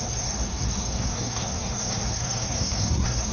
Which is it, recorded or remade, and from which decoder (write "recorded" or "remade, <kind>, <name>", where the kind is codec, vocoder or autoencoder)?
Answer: remade, codec, SNAC